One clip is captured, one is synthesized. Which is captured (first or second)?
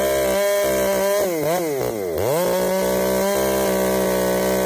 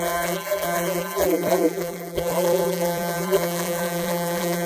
first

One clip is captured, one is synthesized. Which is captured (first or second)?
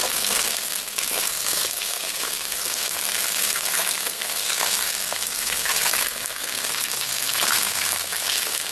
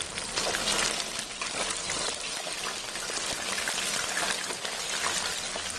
second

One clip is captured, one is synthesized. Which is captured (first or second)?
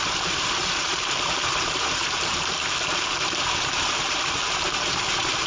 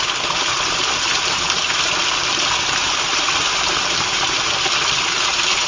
second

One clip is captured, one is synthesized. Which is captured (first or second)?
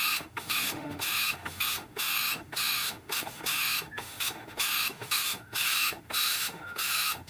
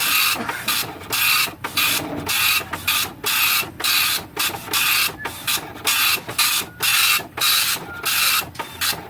second